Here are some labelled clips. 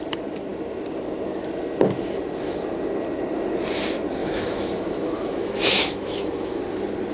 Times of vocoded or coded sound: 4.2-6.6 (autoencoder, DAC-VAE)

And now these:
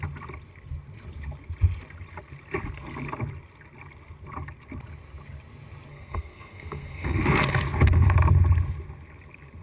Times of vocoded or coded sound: 5.9-7.2 (codec, SNAC)

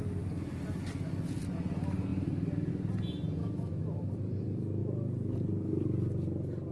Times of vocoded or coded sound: 3.4-4.1 (autoencoder, DAC-VAE)

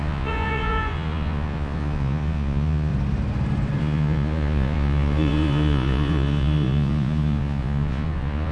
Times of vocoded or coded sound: 0.0-2.9 (vocoder, Vocos); 3.8-8.5